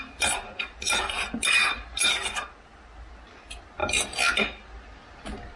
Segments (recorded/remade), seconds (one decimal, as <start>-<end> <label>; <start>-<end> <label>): 0.0-5.6 recorded